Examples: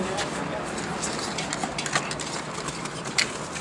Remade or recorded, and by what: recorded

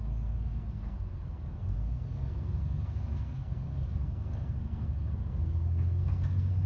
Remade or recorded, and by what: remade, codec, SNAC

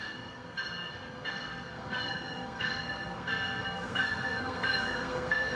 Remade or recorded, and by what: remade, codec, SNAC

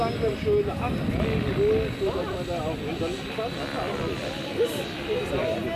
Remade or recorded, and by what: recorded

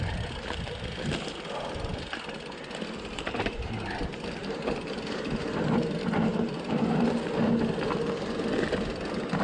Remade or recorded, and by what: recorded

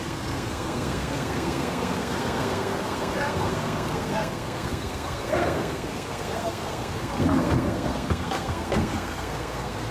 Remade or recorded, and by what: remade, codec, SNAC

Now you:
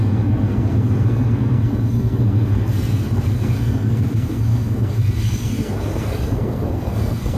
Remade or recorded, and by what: remade, codec, SNAC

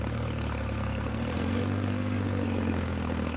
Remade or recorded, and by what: remade, codec, SNAC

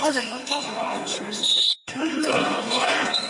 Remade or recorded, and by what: remade, codec, SNAC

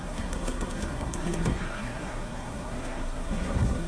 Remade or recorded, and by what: remade, codec, SNAC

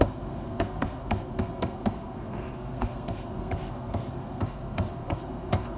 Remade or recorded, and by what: remade, codec, SNAC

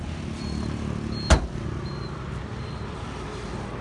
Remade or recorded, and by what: recorded